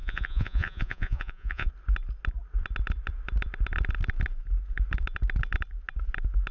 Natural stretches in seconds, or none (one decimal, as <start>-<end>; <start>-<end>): 1.7-6.5